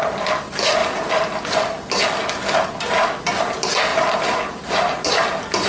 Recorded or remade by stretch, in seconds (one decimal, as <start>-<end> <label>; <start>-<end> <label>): 0.0-5.7 recorded